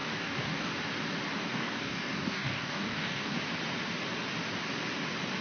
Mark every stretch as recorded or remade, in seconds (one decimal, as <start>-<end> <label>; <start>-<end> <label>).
0.0-0.7 remade; 0.7-1.4 recorded; 1.4-3.4 remade; 3.4-5.4 recorded